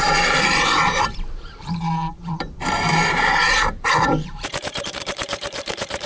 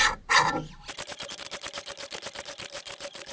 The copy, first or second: first